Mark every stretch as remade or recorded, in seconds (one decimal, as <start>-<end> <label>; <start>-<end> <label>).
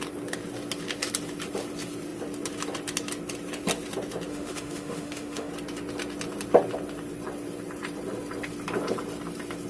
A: 0.0-4.3 recorded; 4.3-5.5 remade; 5.5-9.7 recorded